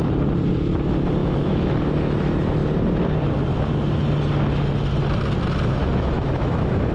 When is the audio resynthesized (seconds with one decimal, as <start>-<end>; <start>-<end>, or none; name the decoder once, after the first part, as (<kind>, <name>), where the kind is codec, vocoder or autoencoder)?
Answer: 1.2-1.8 (autoencoder, DAC-VAE); 5.8-6.9